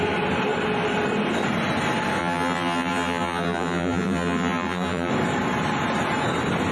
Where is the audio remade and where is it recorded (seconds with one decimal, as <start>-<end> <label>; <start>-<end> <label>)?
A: 0.0-2.2 recorded; 2.2-5.1 remade; 5.1-6.7 recorded